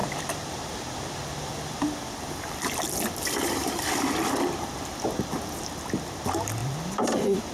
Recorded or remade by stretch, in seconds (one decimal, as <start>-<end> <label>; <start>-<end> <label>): 0.0-0.7 remade; 0.7-1.5 recorded; 1.5-5.1 remade; 5.1-6.6 recorded; 6.6-7.5 remade